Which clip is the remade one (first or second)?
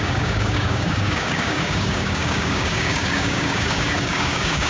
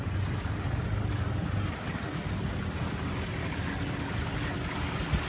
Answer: first